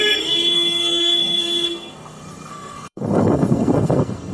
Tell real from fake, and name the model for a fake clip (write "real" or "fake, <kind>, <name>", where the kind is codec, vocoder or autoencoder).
fake, codec, SNAC